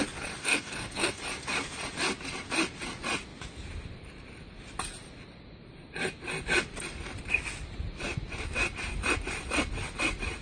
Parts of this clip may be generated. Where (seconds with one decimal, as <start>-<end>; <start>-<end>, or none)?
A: 0.4-1.2